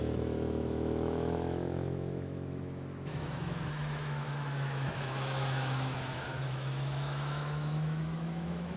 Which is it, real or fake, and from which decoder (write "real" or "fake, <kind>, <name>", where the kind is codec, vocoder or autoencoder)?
fake, autoencoder, DAC-VAE